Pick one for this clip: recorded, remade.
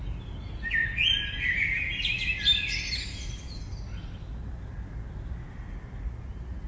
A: recorded